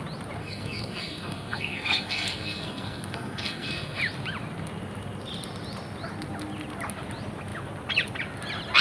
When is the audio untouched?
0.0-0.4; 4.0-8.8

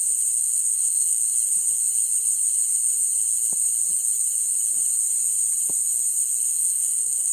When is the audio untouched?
0.0-0.4; 1.2-6.5

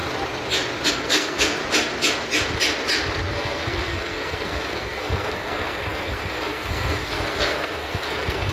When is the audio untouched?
0.0-0.9; 1.6-3.3